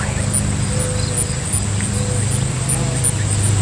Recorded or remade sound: recorded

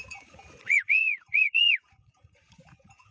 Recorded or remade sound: remade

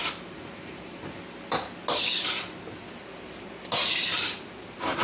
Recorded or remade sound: recorded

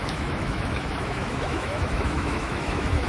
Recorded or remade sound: remade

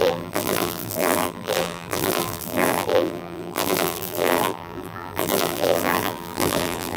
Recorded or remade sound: remade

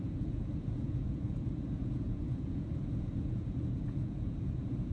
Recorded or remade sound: remade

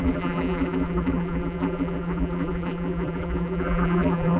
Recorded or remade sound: remade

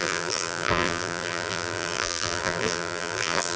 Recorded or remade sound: remade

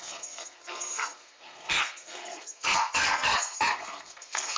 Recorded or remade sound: remade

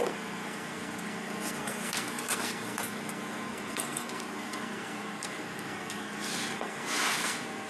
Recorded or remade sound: remade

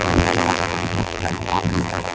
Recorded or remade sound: remade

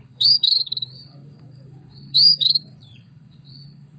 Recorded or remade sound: remade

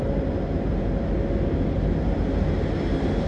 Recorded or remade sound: recorded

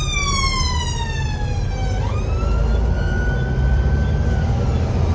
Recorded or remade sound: recorded